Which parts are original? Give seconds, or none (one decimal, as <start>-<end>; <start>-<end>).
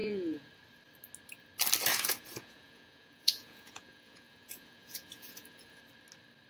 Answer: 0.5-1.9; 5.8-6.5